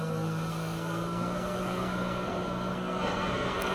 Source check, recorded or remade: remade